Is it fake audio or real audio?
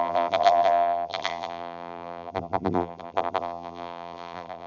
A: fake